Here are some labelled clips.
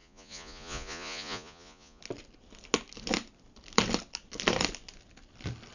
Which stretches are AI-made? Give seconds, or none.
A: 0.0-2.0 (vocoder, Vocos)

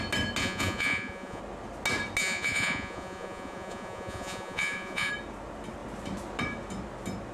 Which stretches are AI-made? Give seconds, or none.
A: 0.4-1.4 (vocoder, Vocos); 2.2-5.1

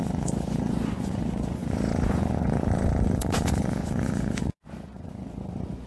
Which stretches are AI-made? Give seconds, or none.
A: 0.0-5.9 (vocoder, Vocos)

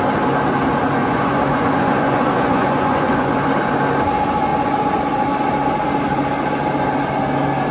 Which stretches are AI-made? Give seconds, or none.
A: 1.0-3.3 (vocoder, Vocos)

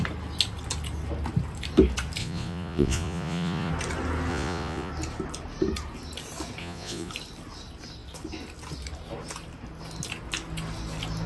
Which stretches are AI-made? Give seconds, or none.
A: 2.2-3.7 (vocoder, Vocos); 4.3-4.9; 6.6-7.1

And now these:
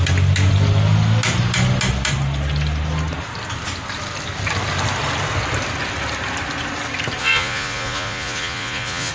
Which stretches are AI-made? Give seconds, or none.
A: 7.2-9.1 (vocoder, Vocos)